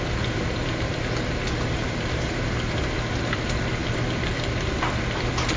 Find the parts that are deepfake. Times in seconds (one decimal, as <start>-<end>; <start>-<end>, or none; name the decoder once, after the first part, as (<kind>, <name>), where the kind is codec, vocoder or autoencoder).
none